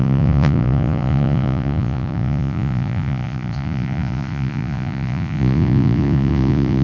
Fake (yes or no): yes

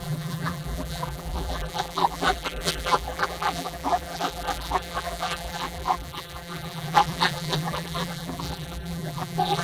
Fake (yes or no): yes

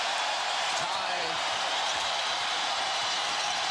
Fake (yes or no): yes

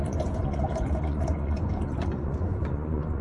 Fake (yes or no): yes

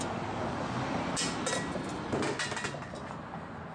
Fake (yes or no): no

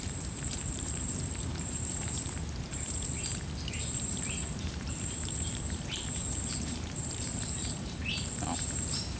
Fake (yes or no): yes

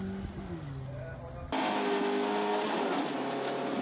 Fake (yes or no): no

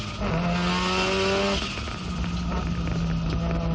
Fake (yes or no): no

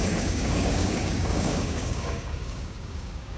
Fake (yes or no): yes